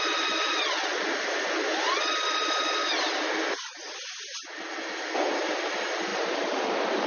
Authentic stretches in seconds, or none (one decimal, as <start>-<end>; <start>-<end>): 0.0-6.1

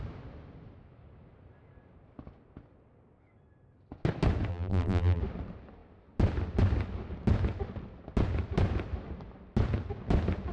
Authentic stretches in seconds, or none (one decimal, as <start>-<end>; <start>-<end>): 0.0-4.5; 5.2-10.5

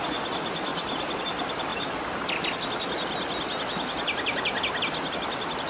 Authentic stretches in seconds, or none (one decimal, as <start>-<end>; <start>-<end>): 0.0-5.7

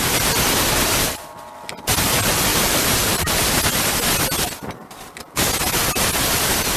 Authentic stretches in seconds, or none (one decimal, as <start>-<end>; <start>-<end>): 0.0-2.5; 3.6-6.8

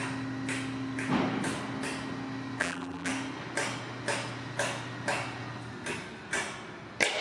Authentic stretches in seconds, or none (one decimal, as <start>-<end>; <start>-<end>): 0.0-2.6; 3.1-7.2